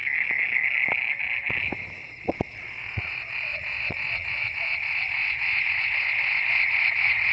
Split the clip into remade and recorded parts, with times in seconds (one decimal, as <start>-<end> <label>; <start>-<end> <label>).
0.0-2.0 recorded; 2.0-7.3 remade